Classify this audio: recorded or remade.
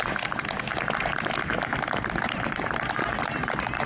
recorded